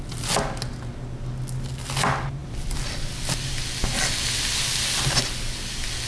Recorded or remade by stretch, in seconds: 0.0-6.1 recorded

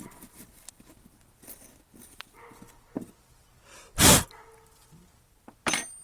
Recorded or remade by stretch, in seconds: 0.0-6.0 recorded

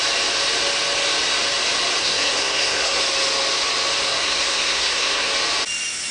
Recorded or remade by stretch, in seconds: 0.0-2.0 recorded; 2.0-3.0 remade; 3.0-4.0 recorded; 4.0-5.3 remade; 5.3-6.1 recorded

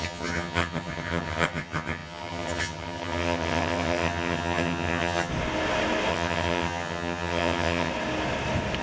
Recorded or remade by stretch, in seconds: 0.0-5.3 remade; 5.3-6.1 recorded; 6.1-7.9 remade; 7.9-8.8 recorded